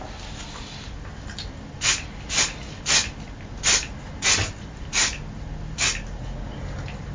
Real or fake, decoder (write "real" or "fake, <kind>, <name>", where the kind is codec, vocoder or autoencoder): real